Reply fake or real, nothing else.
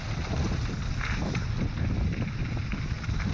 real